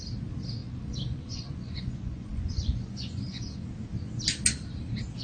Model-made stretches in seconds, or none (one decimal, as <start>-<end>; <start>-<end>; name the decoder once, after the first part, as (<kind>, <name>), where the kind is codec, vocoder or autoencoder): 0.6-3.7 (vocoder, Vocos)